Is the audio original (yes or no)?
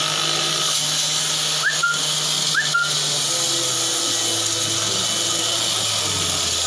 yes